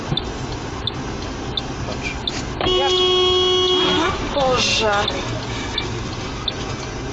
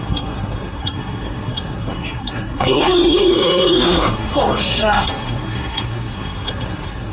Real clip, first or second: first